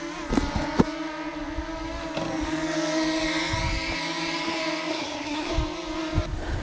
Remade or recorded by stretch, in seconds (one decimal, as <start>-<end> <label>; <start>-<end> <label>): 0.0-4.9 recorded; 4.9-5.5 remade; 5.5-6.6 recorded